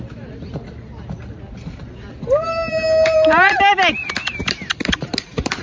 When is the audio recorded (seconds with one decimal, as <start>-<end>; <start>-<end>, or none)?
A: 0.5-3.9